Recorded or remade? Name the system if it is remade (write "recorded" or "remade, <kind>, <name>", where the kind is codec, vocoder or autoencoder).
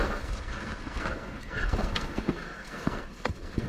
remade, codec, SNAC